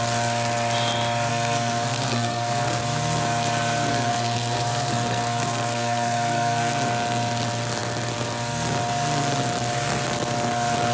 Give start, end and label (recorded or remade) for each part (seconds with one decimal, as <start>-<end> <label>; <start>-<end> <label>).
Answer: 0.0-1.3 recorded; 1.3-2.8 remade; 2.8-3.9 recorded; 3.9-6.7 remade; 6.7-10.9 recorded